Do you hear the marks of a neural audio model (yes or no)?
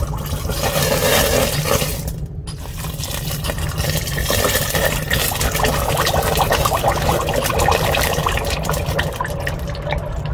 no